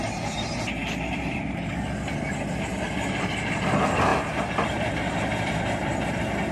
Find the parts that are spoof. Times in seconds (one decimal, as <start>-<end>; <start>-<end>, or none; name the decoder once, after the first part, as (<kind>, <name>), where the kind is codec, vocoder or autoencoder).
0.0-6.5 (vocoder, BigVGAN v2)